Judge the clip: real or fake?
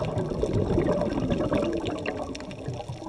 real